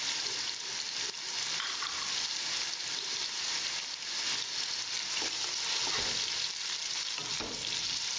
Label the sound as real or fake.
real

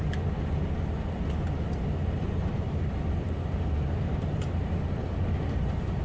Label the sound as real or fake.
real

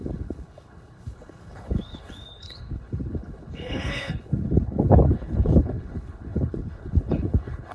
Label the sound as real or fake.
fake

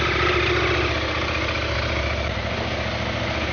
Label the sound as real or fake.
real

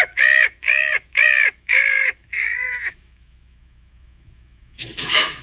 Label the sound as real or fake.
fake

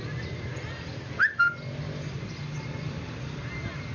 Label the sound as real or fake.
real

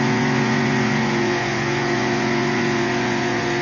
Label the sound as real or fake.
fake